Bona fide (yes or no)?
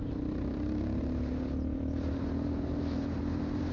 no